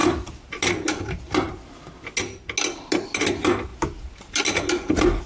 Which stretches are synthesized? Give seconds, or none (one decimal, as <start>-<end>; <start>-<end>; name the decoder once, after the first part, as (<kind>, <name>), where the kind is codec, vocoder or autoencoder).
none